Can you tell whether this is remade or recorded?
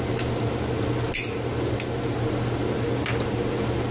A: recorded